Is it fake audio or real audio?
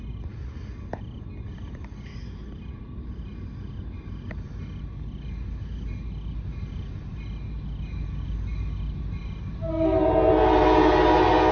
real